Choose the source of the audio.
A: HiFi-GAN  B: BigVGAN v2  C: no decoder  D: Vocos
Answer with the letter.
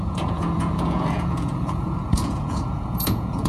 D